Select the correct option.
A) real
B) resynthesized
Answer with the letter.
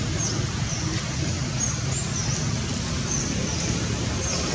A